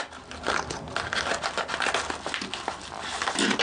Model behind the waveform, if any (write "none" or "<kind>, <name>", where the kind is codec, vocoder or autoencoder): none